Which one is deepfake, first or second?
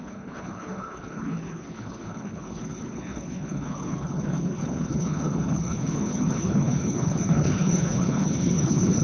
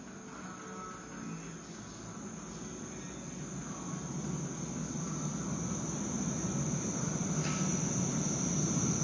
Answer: first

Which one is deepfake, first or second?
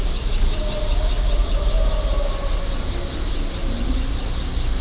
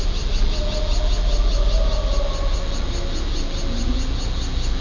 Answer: first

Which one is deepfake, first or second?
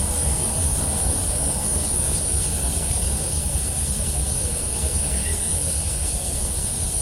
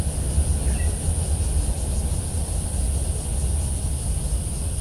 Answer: first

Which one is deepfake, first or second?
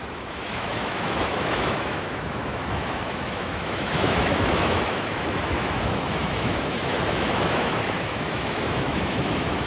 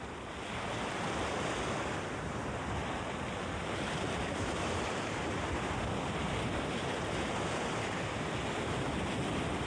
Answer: first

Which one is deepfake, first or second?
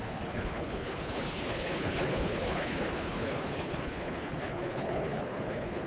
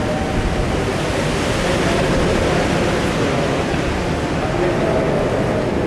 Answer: first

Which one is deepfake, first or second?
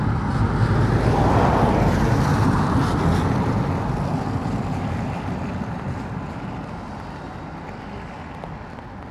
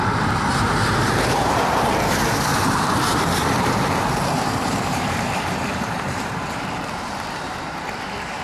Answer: second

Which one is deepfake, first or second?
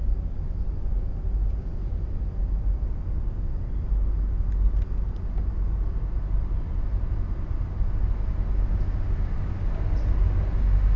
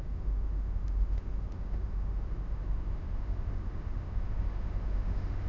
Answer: second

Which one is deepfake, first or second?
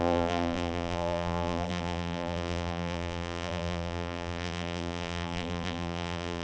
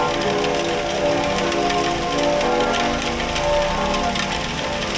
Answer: first